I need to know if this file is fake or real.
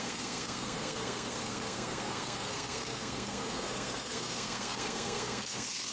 fake